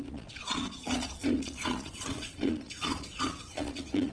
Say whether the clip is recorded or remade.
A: remade